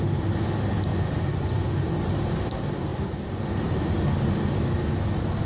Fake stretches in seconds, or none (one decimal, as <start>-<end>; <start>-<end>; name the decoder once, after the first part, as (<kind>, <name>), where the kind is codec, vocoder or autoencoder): 0.9-2.1 (vocoder, Vocos)